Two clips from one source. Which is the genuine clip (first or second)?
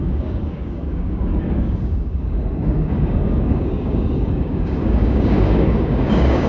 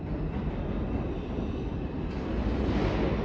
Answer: second